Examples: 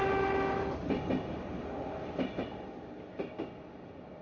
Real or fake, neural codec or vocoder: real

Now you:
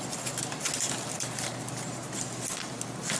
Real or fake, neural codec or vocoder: real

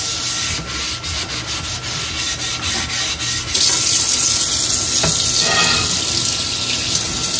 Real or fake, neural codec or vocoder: real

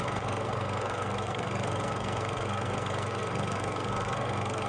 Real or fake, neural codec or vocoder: fake, codec, SNAC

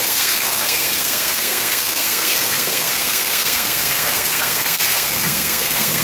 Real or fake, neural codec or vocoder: fake, codec, SNAC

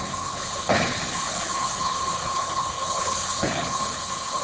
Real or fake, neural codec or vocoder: fake, codec, HILCodec